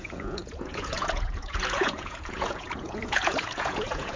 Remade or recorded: remade